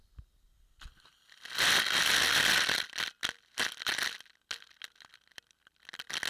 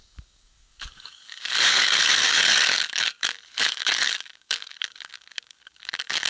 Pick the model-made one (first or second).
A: second